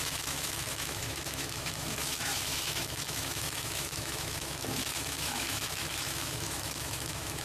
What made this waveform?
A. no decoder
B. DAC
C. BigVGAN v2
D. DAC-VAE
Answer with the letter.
D